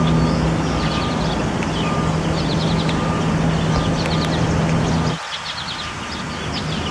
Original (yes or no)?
yes